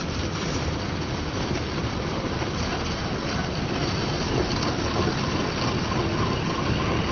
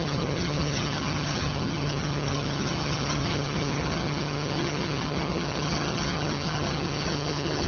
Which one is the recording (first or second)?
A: first